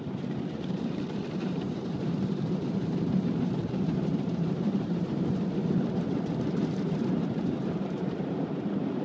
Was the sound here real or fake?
fake